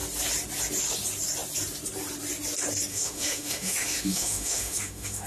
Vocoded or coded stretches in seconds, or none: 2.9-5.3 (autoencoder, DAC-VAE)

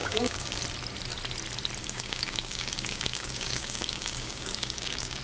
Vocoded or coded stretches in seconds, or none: 0.0-0.6 (codec, DAC); 1.8-5.2

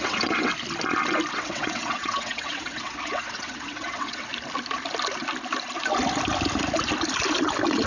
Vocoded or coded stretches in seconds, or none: 0.0-0.5 (vocoder, WaveNeXt); 1.3-4.3

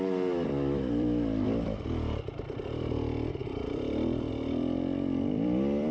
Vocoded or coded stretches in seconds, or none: 0.0-5.9 (vocoder, BigVGAN v2)

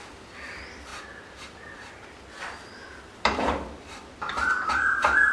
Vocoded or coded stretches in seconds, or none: 0.0-5.3 (vocoder, BigVGAN v2)

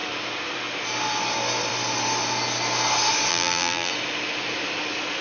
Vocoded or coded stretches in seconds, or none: 3.3-3.9 (vocoder, BigVGAN v2)

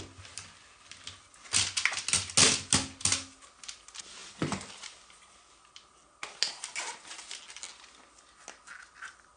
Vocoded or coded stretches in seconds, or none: none